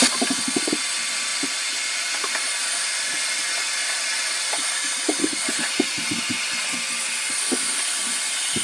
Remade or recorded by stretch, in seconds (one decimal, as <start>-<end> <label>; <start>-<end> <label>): 0.0-3.8 recorded; 3.8-6.1 remade; 6.1-8.6 recorded